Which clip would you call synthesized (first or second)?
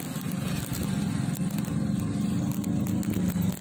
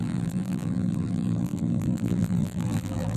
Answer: second